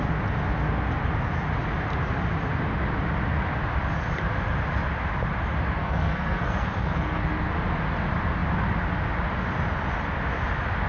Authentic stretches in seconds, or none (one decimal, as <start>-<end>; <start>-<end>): 0.0-5.8; 7.5-10.9